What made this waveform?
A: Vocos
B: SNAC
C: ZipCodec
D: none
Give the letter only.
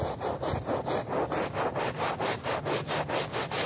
D